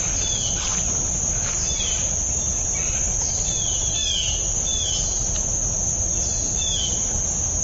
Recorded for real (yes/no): yes